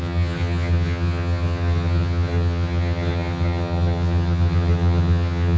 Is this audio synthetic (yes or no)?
yes